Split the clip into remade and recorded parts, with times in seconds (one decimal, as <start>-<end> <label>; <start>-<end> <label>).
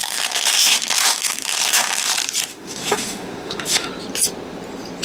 0.0-2.1 remade; 2.1-2.5 recorded; 2.5-3.9 remade; 3.9-5.0 recorded